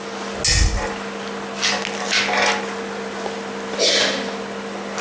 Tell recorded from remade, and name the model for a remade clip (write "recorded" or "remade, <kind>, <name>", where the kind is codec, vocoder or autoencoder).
recorded